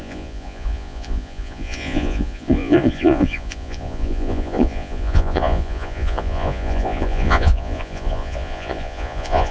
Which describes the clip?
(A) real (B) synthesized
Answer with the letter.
B